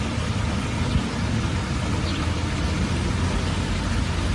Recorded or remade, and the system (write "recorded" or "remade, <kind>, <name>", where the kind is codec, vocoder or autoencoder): recorded